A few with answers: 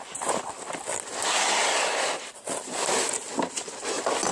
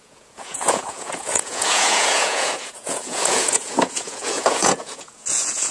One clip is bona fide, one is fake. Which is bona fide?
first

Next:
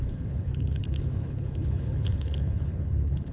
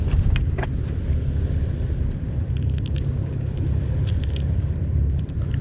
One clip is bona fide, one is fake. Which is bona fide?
second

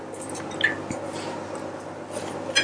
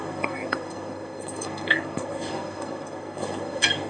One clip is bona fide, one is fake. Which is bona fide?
first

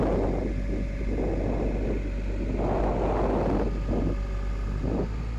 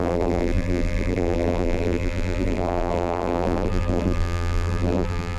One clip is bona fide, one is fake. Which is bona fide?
first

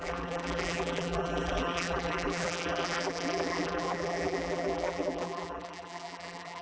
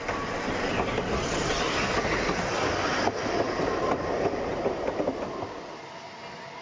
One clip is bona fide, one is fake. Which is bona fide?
second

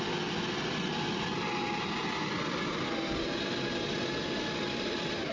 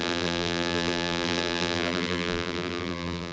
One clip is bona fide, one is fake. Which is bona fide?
first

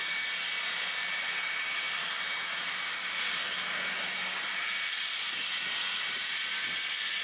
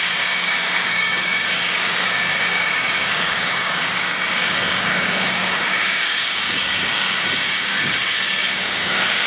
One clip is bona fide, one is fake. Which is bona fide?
first